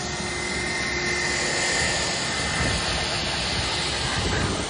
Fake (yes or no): no